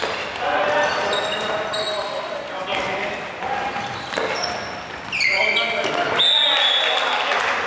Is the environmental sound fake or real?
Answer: real